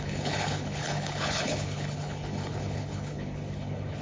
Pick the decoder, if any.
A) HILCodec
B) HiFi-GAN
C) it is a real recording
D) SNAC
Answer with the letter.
A